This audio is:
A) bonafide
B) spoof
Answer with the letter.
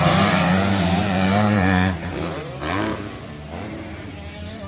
B